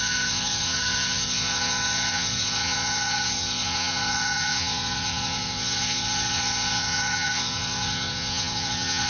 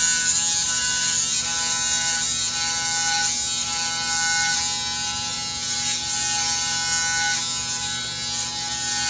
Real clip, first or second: second